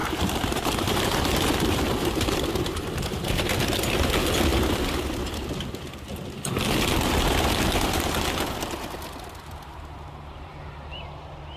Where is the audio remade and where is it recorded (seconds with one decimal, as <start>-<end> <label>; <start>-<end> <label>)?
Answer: 0.0-3.4 remade; 3.4-11.6 recorded